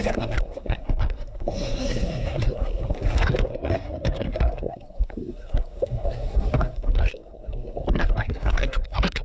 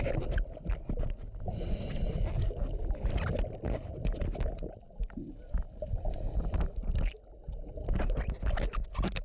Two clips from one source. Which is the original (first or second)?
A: second